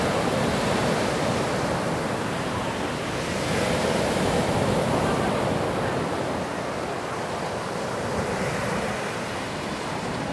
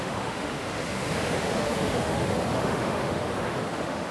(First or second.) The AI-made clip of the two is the second